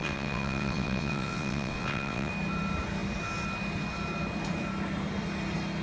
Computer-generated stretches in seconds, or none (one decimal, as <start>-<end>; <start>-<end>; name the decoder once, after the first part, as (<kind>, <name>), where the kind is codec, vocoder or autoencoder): 0.0-2.3 (vocoder, WaveNeXt)